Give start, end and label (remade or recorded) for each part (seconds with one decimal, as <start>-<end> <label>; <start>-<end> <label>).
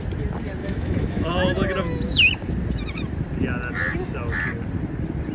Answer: 0.0-0.6 recorded; 0.6-1.3 remade; 1.3-5.3 recorded